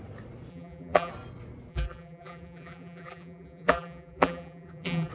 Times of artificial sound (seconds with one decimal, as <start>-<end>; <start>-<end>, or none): 0.5-1.1; 1.7-5.1